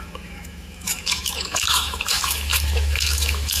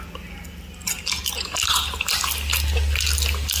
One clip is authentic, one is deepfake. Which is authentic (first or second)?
second